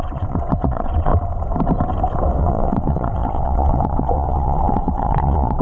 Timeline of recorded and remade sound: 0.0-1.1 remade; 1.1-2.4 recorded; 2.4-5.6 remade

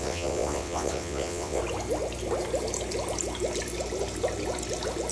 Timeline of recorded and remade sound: 0.0-1.6 remade; 1.6-5.1 recorded

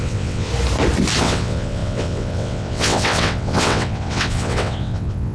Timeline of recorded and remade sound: 0.0-0.5 remade; 0.5-1.2 recorded; 1.2-5.3 remade